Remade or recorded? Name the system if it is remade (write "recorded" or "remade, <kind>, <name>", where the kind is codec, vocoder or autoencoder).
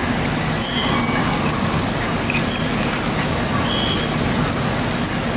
recorded